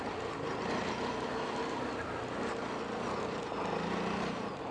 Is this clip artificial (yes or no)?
no